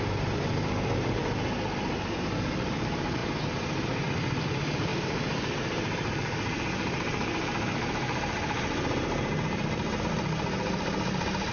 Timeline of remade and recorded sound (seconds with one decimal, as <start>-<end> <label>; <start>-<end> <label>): 0.0-1.2 remade; 1.2-2.8 recorded; 2.8-11.5 remade